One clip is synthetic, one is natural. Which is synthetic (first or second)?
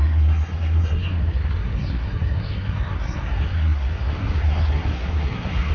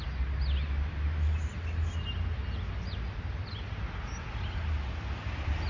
first